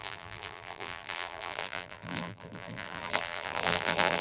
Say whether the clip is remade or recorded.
remade